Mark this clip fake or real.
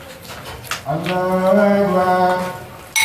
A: real